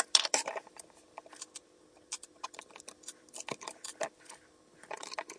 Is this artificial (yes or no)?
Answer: no